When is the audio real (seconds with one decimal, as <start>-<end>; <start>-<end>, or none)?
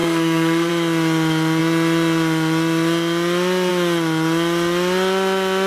0.7-5.7